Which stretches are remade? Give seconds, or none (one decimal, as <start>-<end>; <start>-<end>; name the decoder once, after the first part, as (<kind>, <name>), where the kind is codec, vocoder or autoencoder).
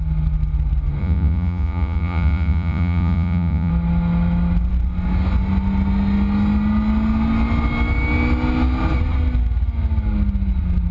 1.0-3.7 (vocoder, Vocos)